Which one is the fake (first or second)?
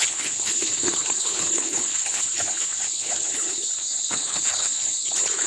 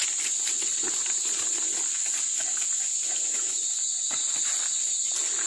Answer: first